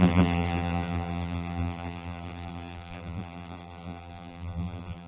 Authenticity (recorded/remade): remade